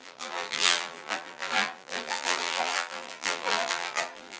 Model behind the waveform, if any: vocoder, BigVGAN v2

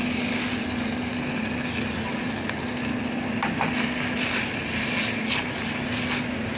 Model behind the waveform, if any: none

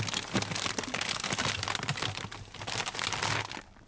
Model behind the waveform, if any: none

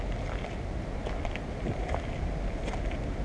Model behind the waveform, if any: none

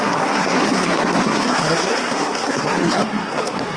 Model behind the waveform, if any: codec, SNAC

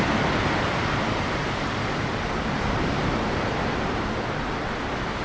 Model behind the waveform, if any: none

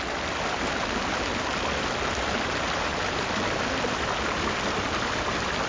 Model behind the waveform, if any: none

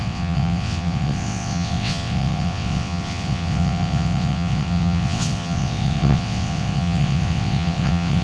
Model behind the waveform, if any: vocoder, WaveNeXt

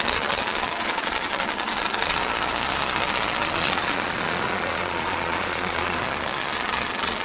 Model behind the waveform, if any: vocoder, Vocos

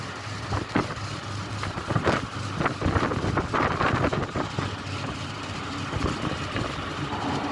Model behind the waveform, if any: none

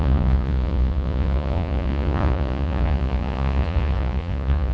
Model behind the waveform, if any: vocoder, Vocos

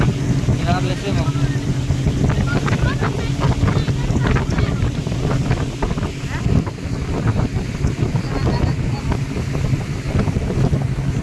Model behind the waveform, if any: none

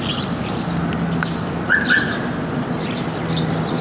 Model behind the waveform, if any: none